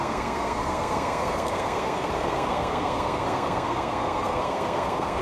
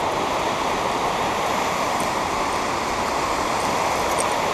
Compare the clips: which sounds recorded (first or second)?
second